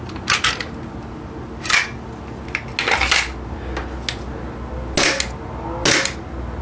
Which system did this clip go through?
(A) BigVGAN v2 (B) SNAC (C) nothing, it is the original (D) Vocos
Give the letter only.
C